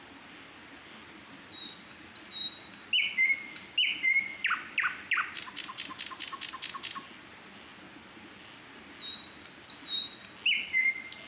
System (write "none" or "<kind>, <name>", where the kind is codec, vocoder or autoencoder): none